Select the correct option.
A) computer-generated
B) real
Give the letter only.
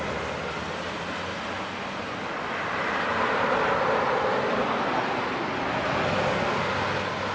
B